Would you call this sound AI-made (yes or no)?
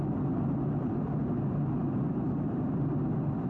no